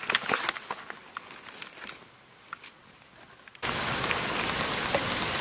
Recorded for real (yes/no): yes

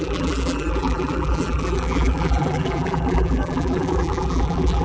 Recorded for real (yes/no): no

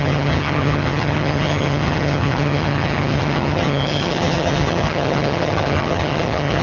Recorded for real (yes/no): no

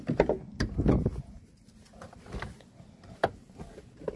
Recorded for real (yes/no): yes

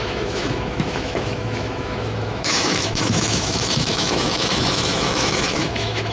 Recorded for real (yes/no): no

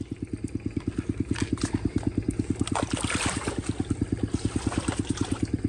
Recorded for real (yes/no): yes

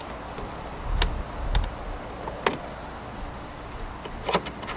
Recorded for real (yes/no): yes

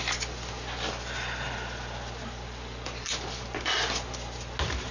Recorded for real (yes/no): yes